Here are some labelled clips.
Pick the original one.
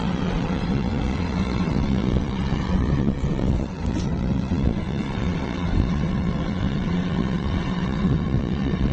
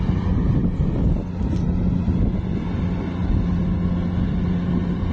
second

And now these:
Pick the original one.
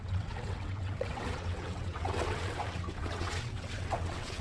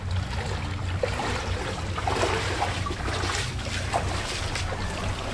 second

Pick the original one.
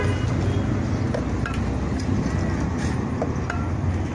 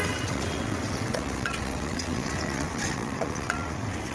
first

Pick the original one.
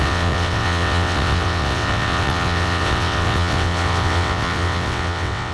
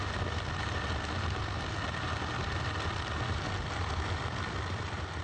second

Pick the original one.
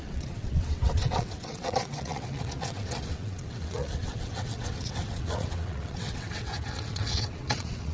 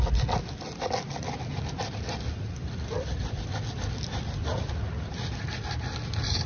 second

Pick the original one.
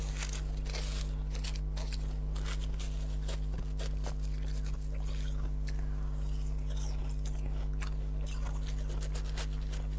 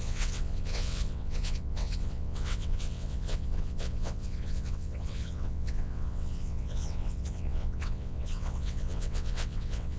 first